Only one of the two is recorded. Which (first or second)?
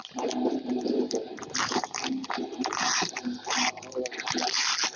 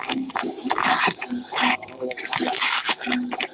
first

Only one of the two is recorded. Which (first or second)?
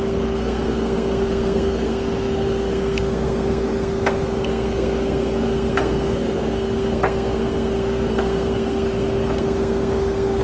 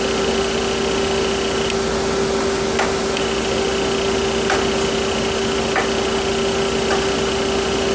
second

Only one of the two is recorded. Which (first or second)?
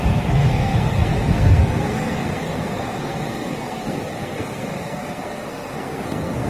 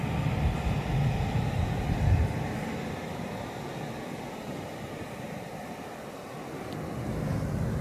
second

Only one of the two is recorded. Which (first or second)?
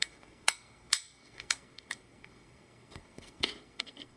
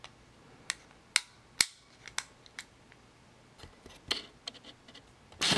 second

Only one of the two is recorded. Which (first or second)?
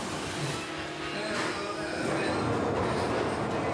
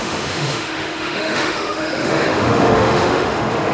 first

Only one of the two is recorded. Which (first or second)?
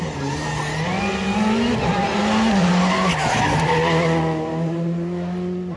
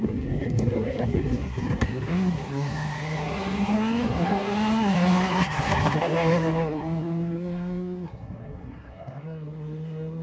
first